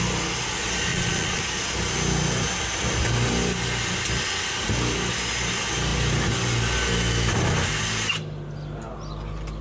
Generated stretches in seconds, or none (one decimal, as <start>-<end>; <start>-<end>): 0.9-1.4

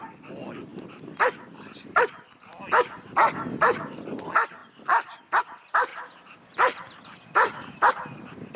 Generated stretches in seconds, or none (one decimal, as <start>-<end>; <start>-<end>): none

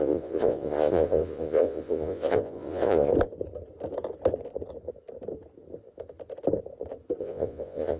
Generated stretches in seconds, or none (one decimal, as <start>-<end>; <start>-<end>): 0.0-3.1; 7.2-8.0

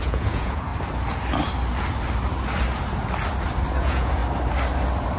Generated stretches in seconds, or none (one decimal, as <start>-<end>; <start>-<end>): 0.0-0.7; 3.8-4.2

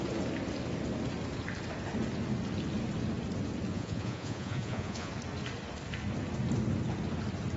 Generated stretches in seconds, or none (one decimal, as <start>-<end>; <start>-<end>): 3.7-5.1

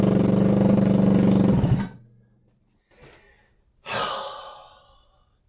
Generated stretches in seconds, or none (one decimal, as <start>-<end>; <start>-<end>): none